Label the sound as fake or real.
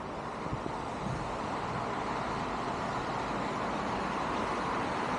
real